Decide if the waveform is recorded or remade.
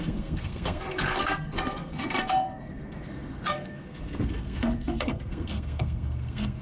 remade